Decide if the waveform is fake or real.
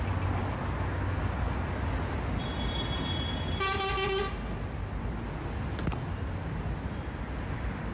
real